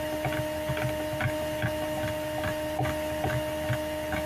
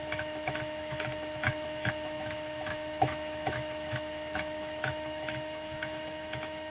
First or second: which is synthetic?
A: second